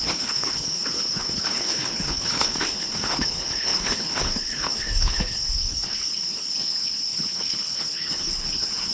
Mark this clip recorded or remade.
remade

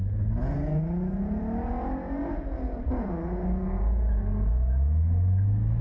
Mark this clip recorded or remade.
recorded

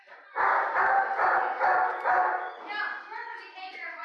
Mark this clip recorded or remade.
recorded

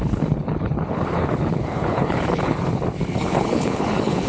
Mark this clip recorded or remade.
remade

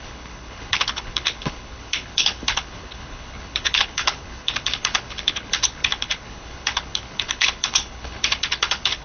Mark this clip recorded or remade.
remade